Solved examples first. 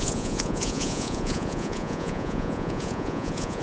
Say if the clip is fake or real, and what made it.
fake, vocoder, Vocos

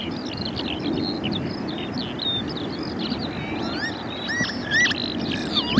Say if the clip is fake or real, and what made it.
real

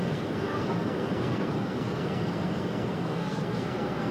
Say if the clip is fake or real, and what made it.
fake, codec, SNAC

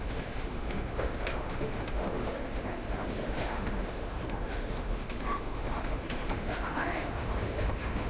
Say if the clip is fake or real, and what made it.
fake, autoencoder, DAC-VAE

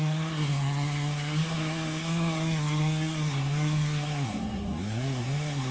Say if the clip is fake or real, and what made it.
fake, codec, SNAC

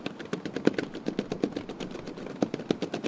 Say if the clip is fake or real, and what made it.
real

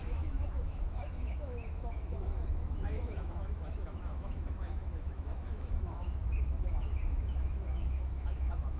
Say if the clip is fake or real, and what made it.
fake, autoencoder, DAC-VAE